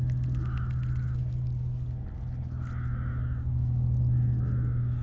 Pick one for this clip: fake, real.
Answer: real